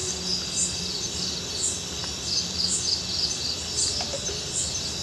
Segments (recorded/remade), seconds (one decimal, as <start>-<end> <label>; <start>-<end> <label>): 0.0-5.0 recorded